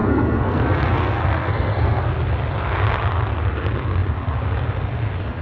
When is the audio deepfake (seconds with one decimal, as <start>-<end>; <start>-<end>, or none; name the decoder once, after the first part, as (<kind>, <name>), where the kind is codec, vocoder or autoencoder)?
0.0-2.1 (codec, SNAC)